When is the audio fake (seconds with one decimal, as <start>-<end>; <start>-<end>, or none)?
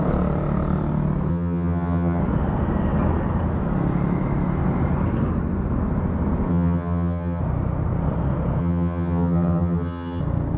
1.3-2.2; 6.5-7.4; 8.6-10.2